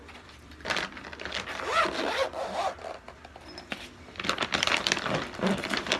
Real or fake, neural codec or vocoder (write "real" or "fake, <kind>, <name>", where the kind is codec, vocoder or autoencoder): real